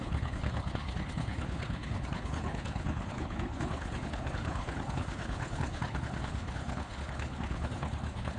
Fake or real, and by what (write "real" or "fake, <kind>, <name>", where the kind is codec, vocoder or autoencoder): fake, codec, HILCodec